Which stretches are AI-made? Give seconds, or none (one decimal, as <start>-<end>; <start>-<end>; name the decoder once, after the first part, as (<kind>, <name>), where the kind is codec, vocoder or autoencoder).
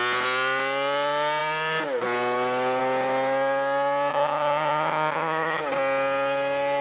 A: 4.1-5.6 (vocoder, HiFi-GAN)